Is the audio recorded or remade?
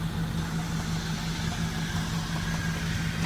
recorded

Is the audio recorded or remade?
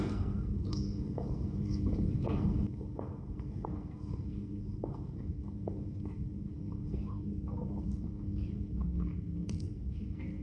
remade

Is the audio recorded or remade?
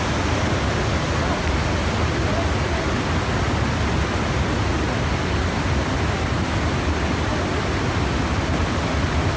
recorded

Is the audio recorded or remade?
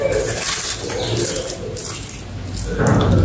recorded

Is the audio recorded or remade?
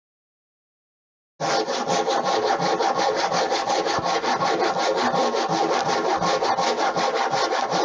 recorded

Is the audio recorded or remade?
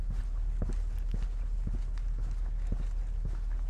recorded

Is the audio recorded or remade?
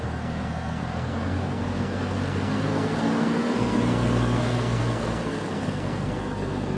remade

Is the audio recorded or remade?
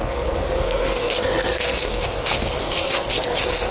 remade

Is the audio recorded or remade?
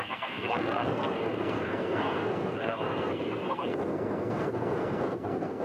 remade